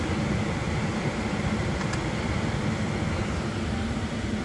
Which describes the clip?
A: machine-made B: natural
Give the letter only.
B